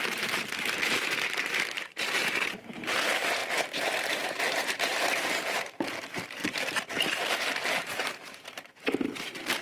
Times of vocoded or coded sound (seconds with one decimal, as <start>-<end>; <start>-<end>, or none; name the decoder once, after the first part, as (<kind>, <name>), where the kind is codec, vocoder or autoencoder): 0.0-9.6 (vocoder, BigVGAN v2)